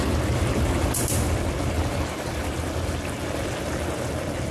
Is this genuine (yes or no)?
yes